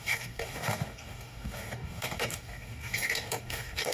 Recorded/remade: remade